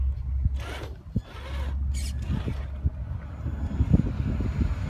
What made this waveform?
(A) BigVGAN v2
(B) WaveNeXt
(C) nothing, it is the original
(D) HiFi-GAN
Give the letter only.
C